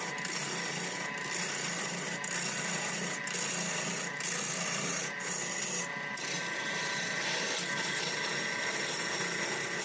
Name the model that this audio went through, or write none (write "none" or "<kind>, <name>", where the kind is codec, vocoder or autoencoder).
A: none